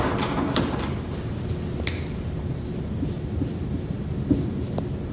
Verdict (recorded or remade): recorded